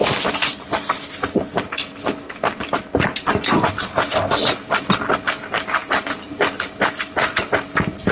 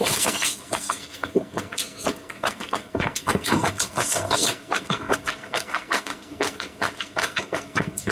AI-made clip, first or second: second